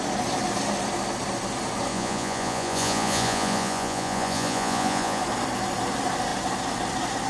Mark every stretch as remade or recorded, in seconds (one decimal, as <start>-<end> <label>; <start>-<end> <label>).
0.0-1.9 recorded; 1.9-5.2 remade; 5.2-7.3 recorded